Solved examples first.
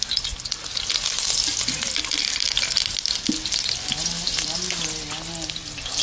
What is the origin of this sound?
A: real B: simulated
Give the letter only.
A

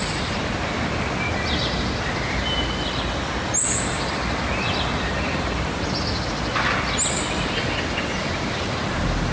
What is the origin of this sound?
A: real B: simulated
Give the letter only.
A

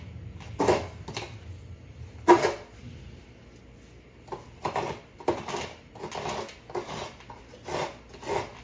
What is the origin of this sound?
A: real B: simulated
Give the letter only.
A